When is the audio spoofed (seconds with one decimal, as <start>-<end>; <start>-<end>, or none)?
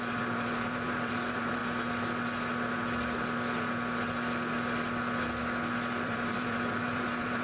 0.0-1.6; 6.0-7.4